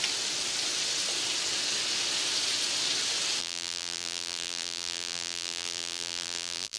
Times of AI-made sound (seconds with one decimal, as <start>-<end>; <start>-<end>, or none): 3.4-6.8